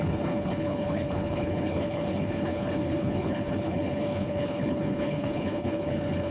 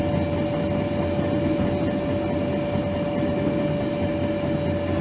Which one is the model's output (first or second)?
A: first